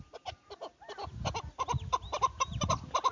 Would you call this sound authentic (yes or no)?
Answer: yes